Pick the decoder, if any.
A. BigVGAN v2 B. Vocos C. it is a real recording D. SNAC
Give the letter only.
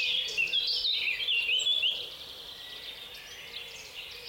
C